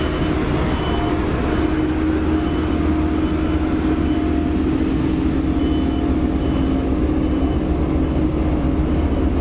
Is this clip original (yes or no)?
yes